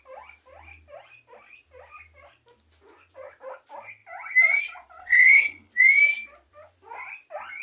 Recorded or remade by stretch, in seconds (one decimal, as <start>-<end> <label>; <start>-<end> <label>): 0.0-5.0 recorded; 5.0-5.7 remade; 5.7-7.6 recorded